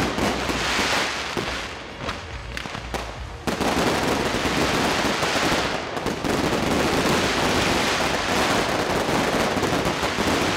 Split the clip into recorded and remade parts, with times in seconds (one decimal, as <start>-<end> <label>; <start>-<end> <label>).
0.0-10.6 recorded